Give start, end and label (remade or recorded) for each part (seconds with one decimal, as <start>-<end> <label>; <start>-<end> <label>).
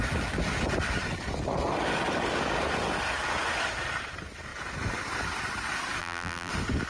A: 0.0-6.0 recorded; 6.0-6.5 remade; 6.5-6.9 recorded